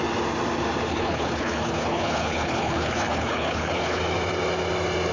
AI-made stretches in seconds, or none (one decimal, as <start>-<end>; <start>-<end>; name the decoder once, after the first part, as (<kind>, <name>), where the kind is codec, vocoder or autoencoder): 0.9-4.0 (codec, HILCodec)